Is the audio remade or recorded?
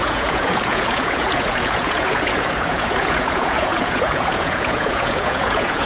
remade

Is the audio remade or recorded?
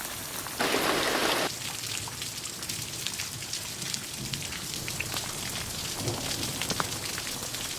recorded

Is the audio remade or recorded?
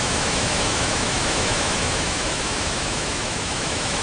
remade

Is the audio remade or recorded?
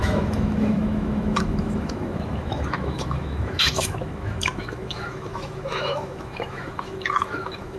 remade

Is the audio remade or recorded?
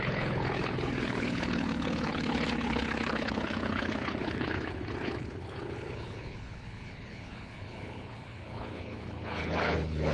remade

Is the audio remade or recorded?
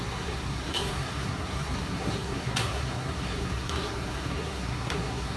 remade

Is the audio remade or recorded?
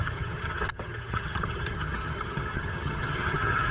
remade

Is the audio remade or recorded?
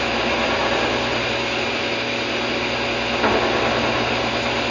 recorded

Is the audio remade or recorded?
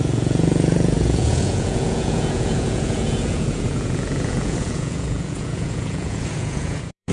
remade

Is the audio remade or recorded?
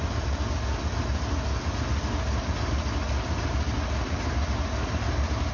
recorded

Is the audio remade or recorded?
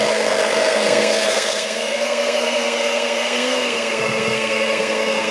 remade